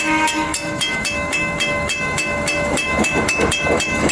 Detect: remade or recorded remade